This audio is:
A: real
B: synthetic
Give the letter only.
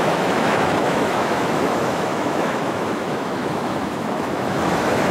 B